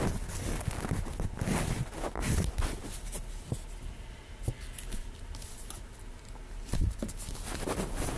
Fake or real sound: real